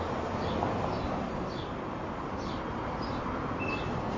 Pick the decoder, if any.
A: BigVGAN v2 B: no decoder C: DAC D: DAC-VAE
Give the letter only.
B